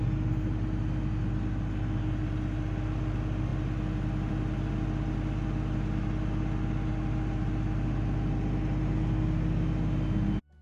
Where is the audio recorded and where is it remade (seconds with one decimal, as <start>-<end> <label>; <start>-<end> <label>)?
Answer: 0.0-10.6 recorded